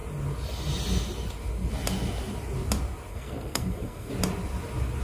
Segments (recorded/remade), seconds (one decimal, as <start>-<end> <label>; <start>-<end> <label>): 0.0-3.1 recorded; 3.1-4.1 remade; 4.1-5.0 recorded